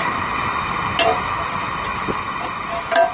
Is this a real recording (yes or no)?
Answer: yes